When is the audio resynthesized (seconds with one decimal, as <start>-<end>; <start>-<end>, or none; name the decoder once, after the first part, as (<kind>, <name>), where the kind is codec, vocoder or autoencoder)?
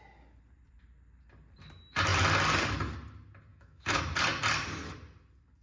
3.5-4.0 (autoencoder, DAC-VAE)